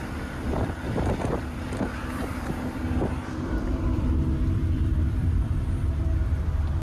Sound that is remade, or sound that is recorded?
remade